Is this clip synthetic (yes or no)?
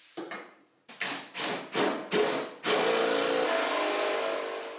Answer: no